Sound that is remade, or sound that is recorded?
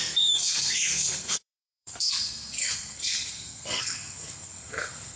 remade